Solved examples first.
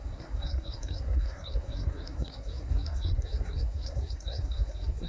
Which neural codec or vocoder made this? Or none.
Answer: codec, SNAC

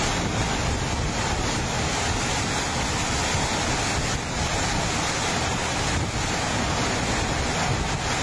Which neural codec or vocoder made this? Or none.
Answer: none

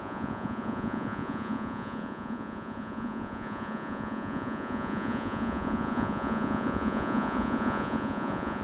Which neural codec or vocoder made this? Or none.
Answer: vocoder, Vocos